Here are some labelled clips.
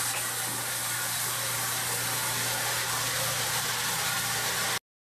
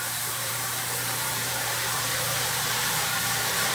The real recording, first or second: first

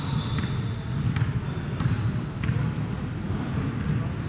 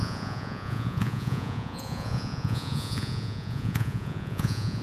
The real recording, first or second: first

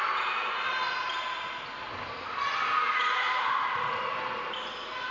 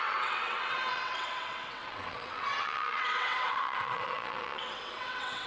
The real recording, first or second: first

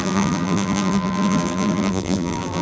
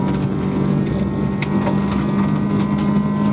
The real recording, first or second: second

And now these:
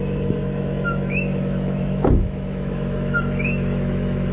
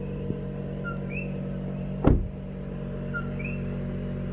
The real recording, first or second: second